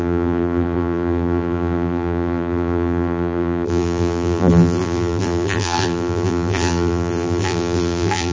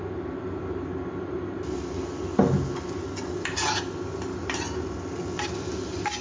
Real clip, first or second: second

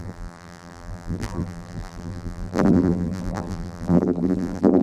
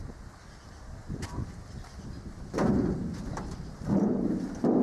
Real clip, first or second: second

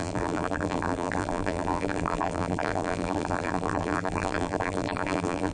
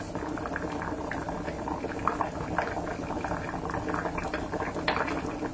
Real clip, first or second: second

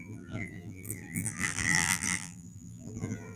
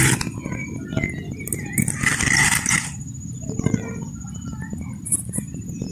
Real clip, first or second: second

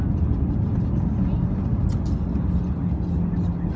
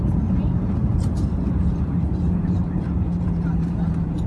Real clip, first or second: first